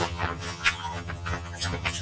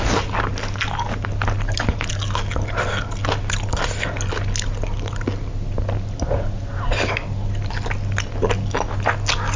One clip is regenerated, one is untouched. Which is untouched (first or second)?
second